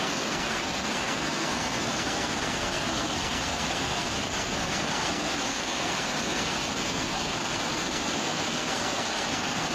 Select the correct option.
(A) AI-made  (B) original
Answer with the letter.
A